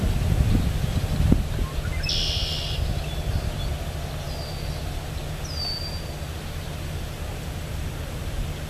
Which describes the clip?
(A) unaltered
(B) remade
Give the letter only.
A